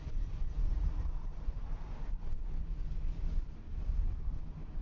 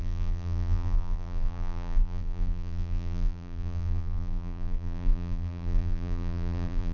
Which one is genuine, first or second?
first